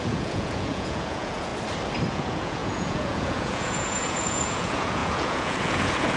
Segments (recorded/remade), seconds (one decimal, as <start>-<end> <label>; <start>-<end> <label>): 0.0-1.5 remade; 1.5-2.1 recorded; 2.1-6.2 remade